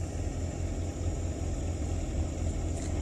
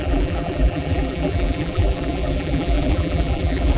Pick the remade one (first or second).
second